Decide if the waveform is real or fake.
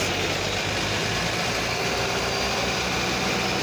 real